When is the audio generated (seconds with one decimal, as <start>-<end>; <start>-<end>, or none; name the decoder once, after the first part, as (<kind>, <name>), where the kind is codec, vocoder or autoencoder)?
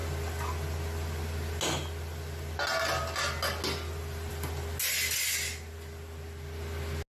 none